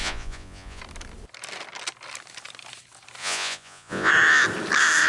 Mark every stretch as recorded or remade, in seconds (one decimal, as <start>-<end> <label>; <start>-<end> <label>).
0.0-0.8 remade; 0.8-3.2 recorded; 3.2-4.1 remade; 4.1-5.1 recorded